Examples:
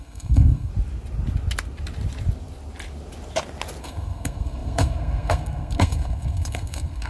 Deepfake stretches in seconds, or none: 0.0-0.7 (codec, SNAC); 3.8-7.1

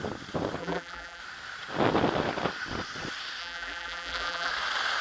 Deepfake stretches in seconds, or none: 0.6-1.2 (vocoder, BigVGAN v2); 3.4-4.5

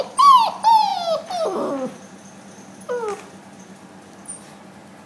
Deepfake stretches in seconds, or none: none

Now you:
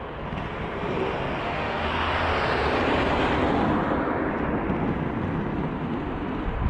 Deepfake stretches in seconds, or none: 1.4-1.9 (autoencoder, DAC-VAE)

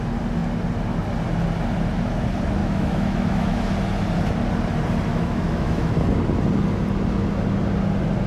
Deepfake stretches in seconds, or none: 2.6-3.7 (autoencoder, DAC-VAE); 5.1-5.9